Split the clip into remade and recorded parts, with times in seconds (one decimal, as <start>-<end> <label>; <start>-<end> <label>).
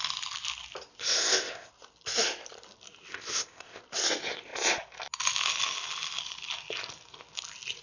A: 0.0-1.0 recorded; 1.0-1.7 remade; 1.7-3.1 recorded; 3.1-3.8 remade; 3.8-7.8 recorded